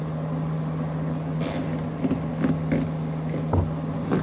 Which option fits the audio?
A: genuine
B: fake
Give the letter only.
A